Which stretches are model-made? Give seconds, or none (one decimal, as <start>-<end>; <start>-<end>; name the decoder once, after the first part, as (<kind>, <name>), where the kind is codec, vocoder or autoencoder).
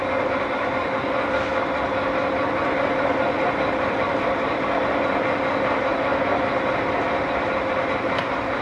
1.5-5.8 (vocoder, BigVGAN v2)